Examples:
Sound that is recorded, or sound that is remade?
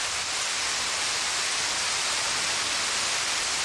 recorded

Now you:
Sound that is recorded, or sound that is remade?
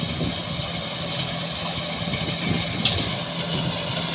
recorded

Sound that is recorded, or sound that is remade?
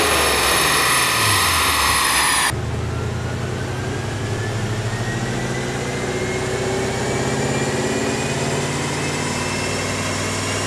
recorded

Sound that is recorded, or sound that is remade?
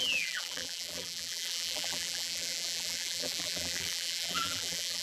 remade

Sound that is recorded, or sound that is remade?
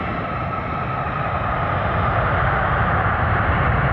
recorded